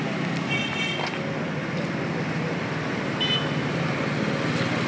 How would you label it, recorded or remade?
recorded